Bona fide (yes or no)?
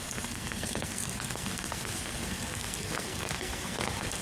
no